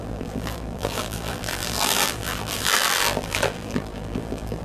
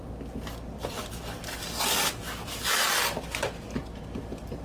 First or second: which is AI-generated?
first